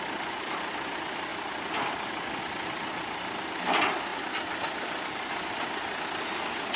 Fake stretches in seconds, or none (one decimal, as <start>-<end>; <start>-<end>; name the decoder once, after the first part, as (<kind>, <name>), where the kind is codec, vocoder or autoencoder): none